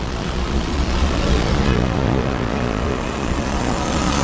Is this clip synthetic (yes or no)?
yes